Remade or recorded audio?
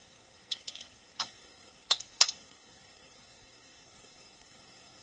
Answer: remade